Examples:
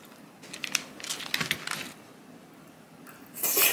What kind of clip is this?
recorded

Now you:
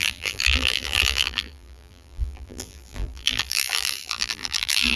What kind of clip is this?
remade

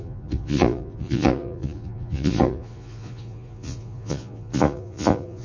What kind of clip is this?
remade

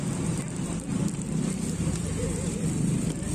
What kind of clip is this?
remade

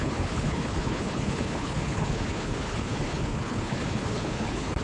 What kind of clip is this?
remade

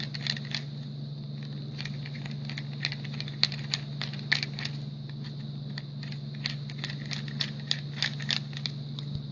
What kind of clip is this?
recorded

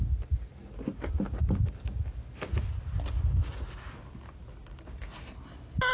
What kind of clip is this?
recorded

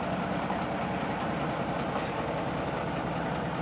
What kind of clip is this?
recorded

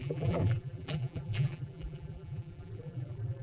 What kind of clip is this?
remade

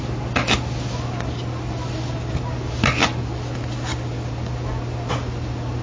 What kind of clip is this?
recorded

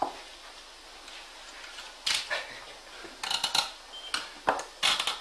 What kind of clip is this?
recorded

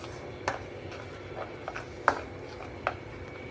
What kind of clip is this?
recorded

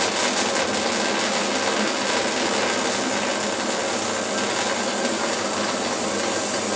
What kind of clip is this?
recorded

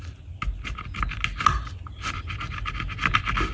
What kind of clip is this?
recorded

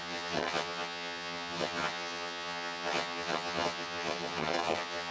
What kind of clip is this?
remade